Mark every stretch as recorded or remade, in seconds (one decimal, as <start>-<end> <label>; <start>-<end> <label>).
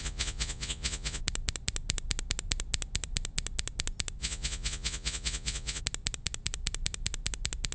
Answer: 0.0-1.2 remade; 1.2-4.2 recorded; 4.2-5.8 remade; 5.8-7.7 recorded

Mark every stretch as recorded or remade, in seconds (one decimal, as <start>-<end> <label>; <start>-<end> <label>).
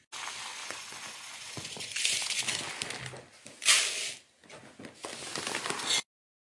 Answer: 0.0-0.6 recorded; 0.6-2.4 remade; 2.4-6.5 recorded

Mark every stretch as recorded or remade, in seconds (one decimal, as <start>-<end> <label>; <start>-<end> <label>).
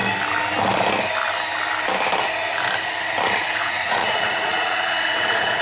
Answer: 0.0-3.4 recorded; 3.4-5.6 remade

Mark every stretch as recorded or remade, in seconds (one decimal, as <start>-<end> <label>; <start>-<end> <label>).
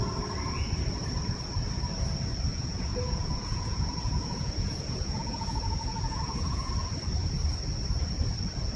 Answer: 0.0-2.5 recorded; 2.5-6.7 remade; 6.7-8.8 recorded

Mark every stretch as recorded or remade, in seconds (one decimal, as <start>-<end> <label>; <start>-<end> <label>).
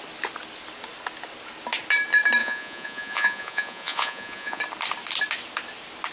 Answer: 0.0-2.4 recorded; 2.4-4.6 remade; 4.6-6.1 recorded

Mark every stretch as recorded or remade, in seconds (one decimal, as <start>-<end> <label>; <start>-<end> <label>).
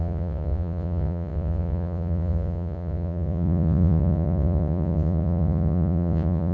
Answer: 0.0-6.5 remade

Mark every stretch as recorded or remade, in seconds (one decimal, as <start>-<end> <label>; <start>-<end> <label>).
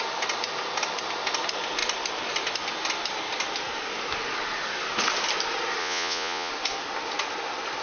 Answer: 0.0-5.8 recorded; 5.8-6.5 remade; 6.5-7.8 recorded